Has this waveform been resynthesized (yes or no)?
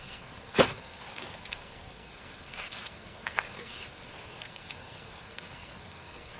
yes